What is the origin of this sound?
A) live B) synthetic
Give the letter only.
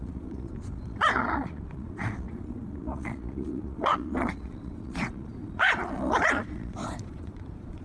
B